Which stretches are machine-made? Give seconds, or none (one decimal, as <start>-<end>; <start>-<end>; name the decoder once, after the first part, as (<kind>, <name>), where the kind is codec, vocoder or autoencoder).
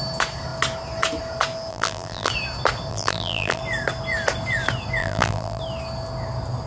1.7-2.3 (vocoder, BigVGAN v2); 2.9-3.6; 5.0-5.6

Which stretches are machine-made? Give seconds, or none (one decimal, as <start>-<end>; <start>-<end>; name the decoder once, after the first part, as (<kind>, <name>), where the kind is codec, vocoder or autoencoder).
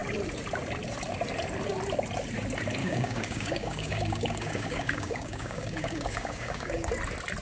2.8-6.9 (codec, DAC)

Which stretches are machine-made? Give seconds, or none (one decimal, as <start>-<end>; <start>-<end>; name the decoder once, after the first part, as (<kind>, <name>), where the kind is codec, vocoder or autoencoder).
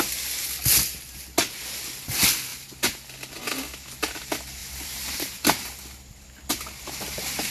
2.5-3.0 (vocoder, BigVGAN v2); 4.6-5.7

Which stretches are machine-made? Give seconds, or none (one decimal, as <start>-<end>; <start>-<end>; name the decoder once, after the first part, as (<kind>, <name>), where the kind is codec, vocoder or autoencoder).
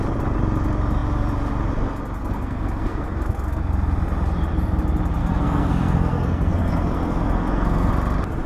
2.2-3.6 (codec, SNAC); 5.2-7.9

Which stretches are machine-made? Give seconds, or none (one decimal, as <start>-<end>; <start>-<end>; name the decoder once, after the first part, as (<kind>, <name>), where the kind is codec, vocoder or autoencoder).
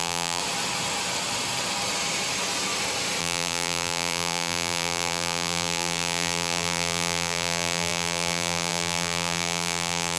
0.0-0.4 (vocoder, BigVGAN v2); 3.2-10.2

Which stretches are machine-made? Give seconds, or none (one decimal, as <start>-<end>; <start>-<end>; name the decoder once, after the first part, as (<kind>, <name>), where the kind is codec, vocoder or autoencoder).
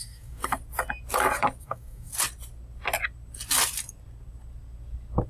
0.0-0.4 (codec, DAC); 1.6-2.1